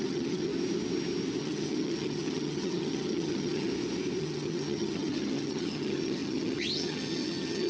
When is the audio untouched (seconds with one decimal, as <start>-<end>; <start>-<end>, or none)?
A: 0.5-1.4; 3.7-4.2